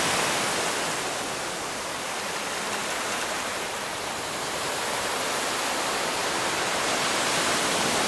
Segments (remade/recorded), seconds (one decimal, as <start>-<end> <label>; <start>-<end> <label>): 0.0-2.8 recorded; 2.8-5.1 remade; 5.1-6.2 recorded; 6.2-8.1 remade